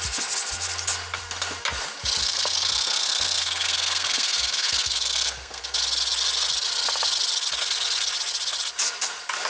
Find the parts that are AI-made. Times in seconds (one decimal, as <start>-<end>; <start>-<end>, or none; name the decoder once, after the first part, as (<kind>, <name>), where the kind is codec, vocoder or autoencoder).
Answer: 2.2-5.6 (codec, SNAC)